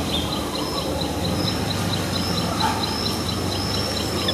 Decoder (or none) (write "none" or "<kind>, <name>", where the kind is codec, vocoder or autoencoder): none